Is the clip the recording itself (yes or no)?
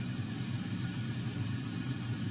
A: yes